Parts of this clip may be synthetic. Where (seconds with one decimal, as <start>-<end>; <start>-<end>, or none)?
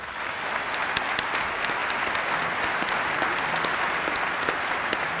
none